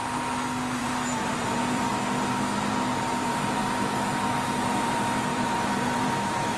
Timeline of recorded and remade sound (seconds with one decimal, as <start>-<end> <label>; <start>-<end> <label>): 0.0-0.8 recorded; 0.8-1.9 remade; 1.9-2.6 recorded; 2.6-3.6 remade; 3.6-4.6 recorded; 4.6-6.6 remade